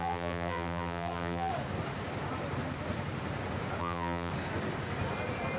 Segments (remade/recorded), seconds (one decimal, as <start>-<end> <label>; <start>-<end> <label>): 0.0-1.5 remade; 1.5-3.8 recorded; 3.8-4.3 remade; 4.3-5.6 recorded